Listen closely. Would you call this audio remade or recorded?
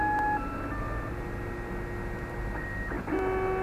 recorded